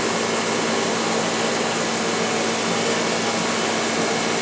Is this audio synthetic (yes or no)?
no